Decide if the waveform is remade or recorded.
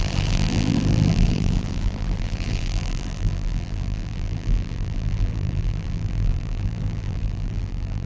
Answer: remade